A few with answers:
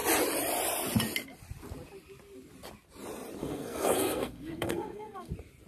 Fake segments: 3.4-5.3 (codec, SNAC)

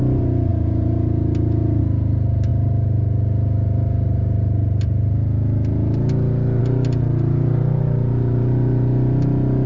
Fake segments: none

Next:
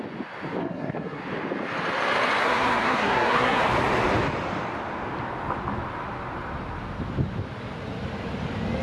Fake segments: 0.6-1.2 (codec, SNAC); 2.4-3.6

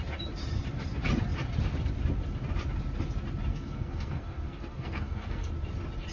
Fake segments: 3.5-5.5 (codec, SNAC)

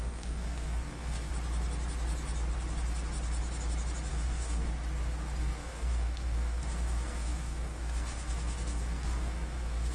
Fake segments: 0.0-1.3 (codec, SNAC); 4.1-4.7; 5.4-9.9

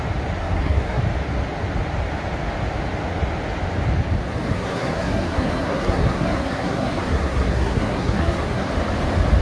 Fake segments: 0.4-1.0 (codec, SNAC); 4.5-8.7

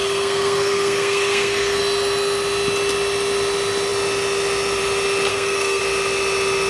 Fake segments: 0.0-1.8 (codec, SNAC); 5.3-5.8